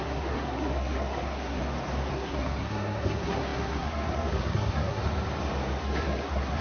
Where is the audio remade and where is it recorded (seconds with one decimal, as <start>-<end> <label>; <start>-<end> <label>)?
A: 0.0-1.6 remade; 1.6-2.1 recorded; 2.1-5.0 remade; 5.0-5.8 recorded; 5.8-6.6 remade